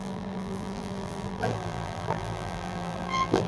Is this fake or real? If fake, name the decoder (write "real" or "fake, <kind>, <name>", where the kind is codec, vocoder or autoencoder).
fake, vocoder, BigVGAN v2